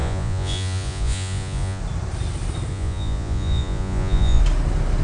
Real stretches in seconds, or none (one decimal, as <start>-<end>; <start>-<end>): 1.8-2.7; 4.4-5.0